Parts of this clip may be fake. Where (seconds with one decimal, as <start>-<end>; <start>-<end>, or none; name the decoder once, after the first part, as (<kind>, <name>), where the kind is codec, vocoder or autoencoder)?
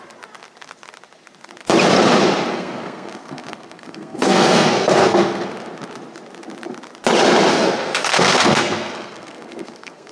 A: 2.5-5.5 (codec, SNAC); 7.5-10.1